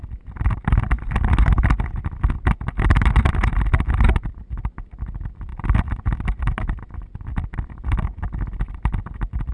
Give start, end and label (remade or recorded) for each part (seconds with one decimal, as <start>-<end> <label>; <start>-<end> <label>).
0.0-9.5 recorded